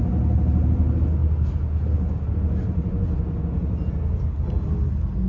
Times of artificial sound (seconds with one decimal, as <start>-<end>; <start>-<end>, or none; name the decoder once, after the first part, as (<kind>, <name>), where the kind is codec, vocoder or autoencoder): none